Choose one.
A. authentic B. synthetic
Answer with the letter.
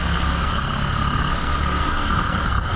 B